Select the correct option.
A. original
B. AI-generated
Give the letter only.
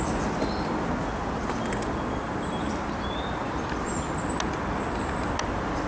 A